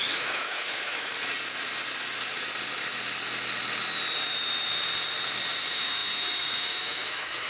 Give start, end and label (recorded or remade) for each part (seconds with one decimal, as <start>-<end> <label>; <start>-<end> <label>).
0.0-1.1 remade; 1.1-5.6 recorded; 5.6-7.5 remade

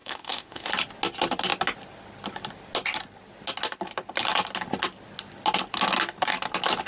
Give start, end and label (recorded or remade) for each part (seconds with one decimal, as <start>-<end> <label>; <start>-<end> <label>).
0.0-0.7 remade; 0.7-6.9 recorded

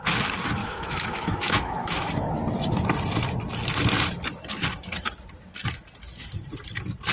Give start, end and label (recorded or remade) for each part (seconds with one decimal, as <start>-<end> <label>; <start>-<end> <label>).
0.0-0.6 recorded; 0.6-2.1 remade; 2.1-7.1 recorded

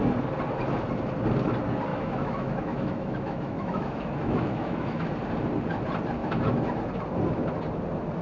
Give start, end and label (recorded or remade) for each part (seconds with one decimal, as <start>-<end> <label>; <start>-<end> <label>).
0.0-1.9 recorded; 1.9-5.1 remade; 5.1-6.2 recorded; 6.2-6.8 remade; 6.8-8.2 recorded

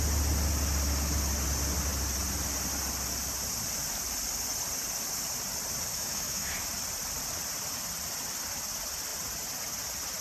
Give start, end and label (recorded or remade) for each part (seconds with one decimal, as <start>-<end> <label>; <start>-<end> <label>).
0.0-5.9 recorded; 5.9-6.5 remade; 6.5-10.2 recorded

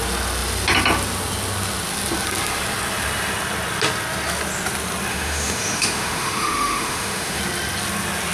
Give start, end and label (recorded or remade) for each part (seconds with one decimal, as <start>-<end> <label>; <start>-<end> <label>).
0.0-5.1 recorded; 5.1-7.4 remade; 7.4-8.3 recorded

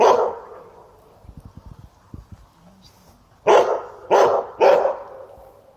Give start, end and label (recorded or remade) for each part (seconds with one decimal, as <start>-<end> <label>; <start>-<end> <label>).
0.0-5.8 recorded

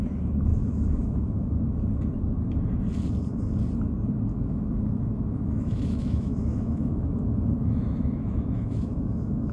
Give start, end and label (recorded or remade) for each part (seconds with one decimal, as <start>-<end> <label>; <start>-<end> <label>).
0.0-0.5 recorded; 0.5-1.8 remade; 1.8-4.3 recorded; 4.3-9.5 remade